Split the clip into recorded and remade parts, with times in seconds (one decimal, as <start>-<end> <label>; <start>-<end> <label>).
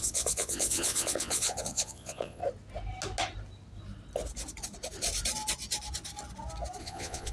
0.0-2.4 remade; 2.4-6.8 recorded; 6.8-7.3 remade